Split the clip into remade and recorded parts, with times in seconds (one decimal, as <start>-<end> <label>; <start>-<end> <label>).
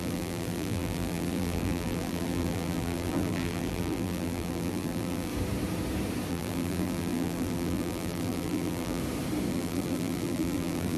0.0-5.3 remade; 5.3-6.3 recorded; 6.3-9.0 remade; 9.0-9.5 recorded; 9.5-11.0 remade